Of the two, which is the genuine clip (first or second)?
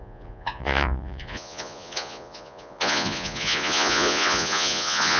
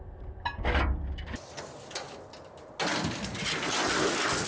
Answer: second